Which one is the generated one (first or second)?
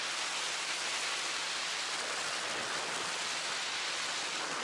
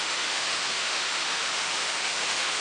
second